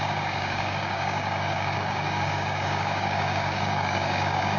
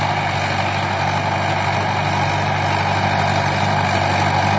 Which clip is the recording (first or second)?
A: second